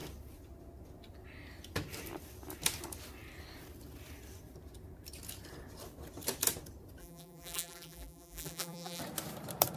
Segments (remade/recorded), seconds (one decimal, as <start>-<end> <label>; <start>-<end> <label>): 0.0-7.0 recorded; 7.0-9.0 remade; 9.0-9.8 recorded